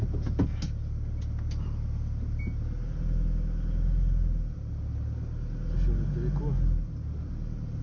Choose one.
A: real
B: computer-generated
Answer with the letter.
A